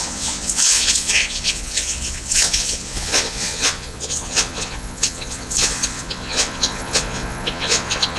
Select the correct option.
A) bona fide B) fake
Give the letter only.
B